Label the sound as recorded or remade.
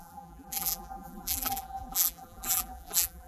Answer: remade